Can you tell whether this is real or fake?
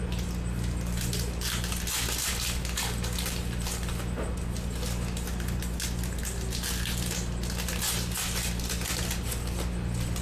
real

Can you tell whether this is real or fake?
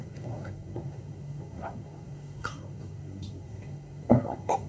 fake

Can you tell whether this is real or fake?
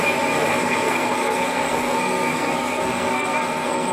fake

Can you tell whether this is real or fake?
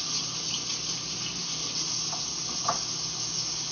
real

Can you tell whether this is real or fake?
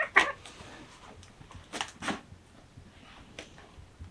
real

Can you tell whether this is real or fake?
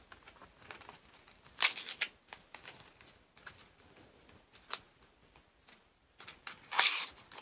real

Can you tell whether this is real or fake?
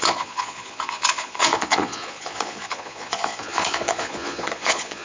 fake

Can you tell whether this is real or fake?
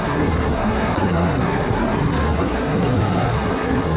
fake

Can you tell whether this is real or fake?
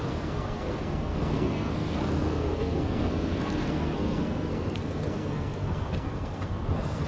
fake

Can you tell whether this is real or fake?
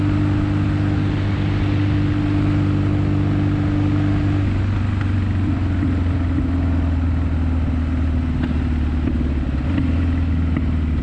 real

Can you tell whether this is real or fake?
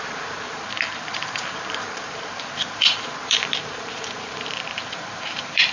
fake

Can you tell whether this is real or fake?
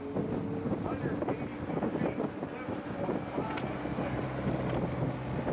real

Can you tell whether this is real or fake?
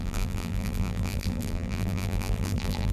fake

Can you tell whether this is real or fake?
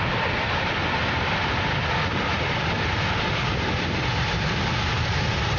real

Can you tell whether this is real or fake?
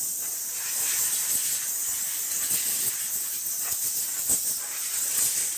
real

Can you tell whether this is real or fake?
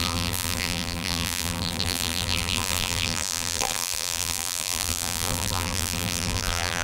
fake